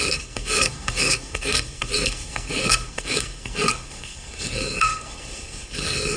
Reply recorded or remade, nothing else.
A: remade